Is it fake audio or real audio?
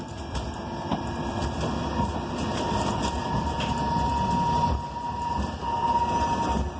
real